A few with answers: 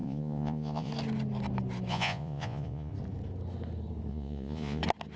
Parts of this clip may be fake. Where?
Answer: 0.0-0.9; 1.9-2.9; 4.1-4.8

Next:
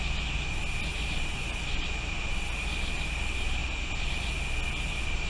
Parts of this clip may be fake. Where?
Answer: none